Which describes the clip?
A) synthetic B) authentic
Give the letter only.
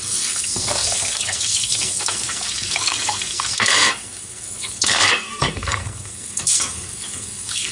A